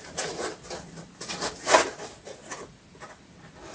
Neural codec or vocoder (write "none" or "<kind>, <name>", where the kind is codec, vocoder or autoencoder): none